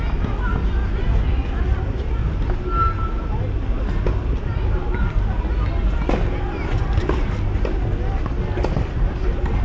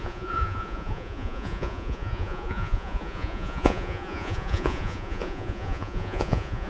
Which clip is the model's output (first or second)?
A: second